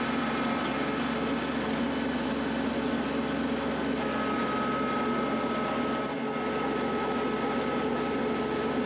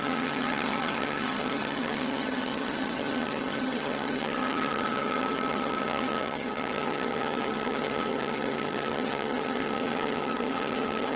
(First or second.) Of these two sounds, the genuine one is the first